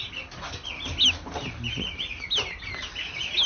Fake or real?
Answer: real